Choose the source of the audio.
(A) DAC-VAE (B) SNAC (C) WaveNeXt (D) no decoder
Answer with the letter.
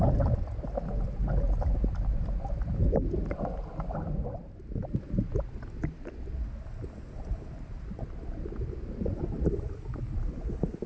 D